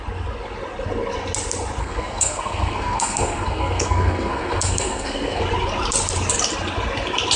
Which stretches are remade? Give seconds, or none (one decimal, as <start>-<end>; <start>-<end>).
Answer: 1.8-5.4